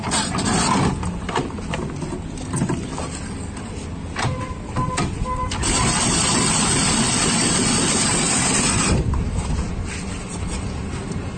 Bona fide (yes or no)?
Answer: yes